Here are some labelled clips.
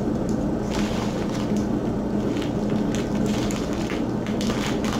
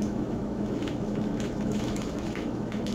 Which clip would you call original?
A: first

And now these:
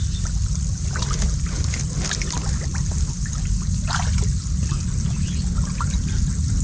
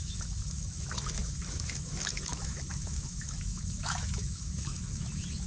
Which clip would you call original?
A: first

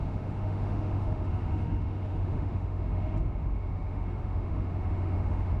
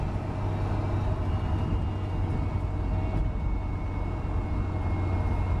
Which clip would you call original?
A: second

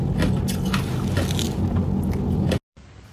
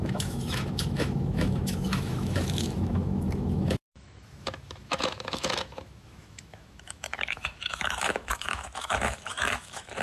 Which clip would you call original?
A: first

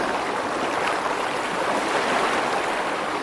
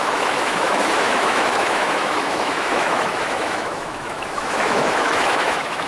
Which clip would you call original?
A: first